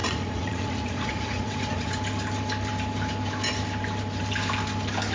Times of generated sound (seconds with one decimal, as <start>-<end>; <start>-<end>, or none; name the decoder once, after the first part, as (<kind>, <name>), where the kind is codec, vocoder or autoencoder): 0.0-2.0 (vocoder, Vocos)